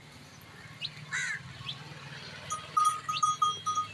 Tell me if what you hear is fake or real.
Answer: real